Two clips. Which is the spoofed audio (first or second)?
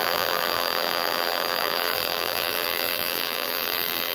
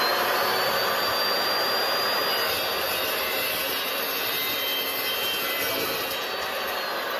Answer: first